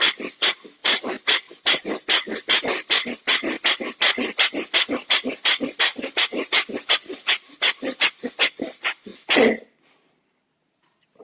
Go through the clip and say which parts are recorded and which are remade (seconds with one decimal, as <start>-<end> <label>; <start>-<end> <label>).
0.0-0.8 recorded; 0.8-1.6 remade; 1.6-5.9 recorded; 5.9-6.4 remade; 6.4-11.2 recorded